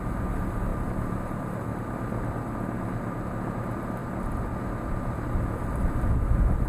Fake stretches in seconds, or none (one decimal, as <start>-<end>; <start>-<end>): none